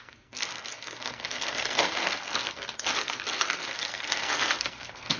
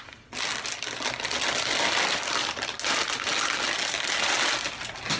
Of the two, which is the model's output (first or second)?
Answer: first